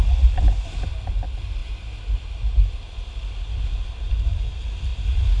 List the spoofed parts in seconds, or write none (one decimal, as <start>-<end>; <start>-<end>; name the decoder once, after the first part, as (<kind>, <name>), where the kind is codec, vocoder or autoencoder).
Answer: none